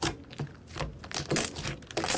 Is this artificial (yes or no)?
no